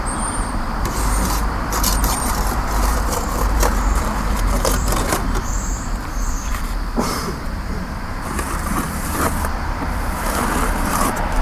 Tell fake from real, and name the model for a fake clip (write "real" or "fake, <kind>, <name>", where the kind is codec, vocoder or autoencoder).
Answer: fake, vocoder, BigVGAN v2